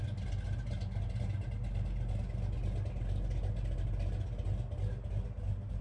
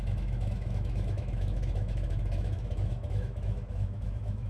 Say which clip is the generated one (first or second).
second